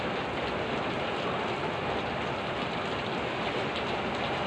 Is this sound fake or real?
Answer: real